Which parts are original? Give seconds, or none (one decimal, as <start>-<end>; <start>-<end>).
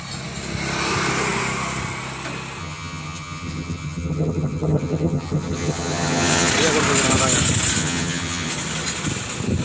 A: 0.0-2.6; 6.5-7.8; 8.5-9.6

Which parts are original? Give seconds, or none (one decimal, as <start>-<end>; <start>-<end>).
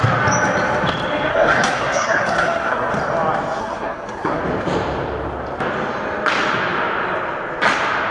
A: 0.0-1.3; 2.9-3.6; 4.4-8.1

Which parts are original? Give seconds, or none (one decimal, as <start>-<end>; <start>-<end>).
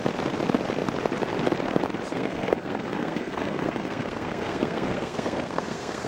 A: 0.0-2.1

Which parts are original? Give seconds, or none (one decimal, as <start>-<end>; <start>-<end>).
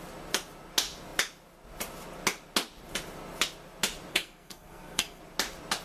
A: 0.0-4.1; 5.2-5.8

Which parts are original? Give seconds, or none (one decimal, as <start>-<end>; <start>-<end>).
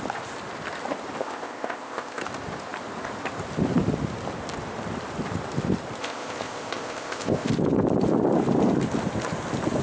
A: 0.0-1.2; 2.2-6.0; 7.5-9.8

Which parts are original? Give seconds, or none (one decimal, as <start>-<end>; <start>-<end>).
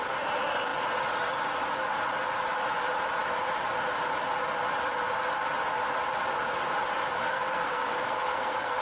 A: 0.0-7.2